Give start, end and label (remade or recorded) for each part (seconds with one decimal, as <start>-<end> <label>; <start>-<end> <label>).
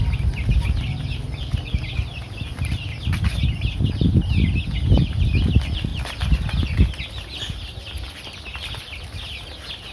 0.0-9.9 recorded